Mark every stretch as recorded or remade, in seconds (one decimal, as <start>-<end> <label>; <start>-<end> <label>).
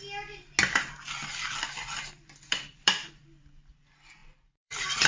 0.0-1.2 recorded; 1.2-3.2 remade; 3.2-4.2 recorded; 4.2-5.1 remade